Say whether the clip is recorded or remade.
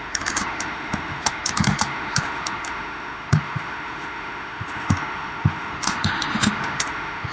remade